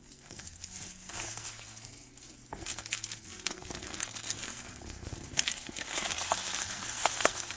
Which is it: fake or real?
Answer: fake